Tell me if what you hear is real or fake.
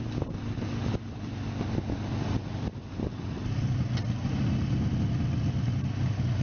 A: real